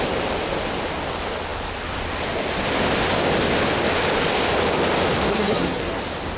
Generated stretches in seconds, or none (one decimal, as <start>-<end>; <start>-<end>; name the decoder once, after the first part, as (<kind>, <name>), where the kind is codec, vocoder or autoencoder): 5.3-6.0 (codec, SNAC)